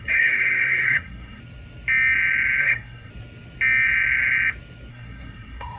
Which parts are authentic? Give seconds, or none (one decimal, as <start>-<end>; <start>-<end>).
1.4-2.6; 3.1-4.9